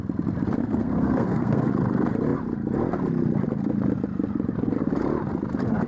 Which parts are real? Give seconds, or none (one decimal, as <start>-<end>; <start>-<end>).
0.0-0.6; 1.7-5.9